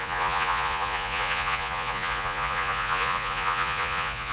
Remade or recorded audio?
remade